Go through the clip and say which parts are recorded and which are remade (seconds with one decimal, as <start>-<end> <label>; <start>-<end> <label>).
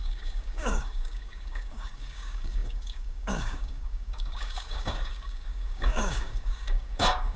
0.0-7.4 remade